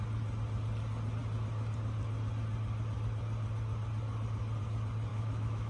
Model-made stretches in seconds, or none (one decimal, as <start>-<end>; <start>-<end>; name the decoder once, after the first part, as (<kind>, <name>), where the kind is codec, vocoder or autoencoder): 5.1-5.7 (autoencoder, DAC-VAE)